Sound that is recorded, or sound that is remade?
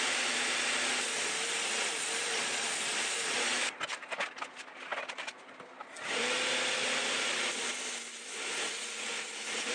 recorded